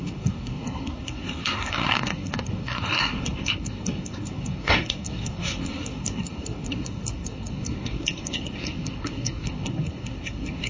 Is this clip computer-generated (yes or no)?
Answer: yes